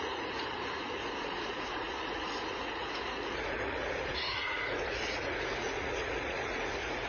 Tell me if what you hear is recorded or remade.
remade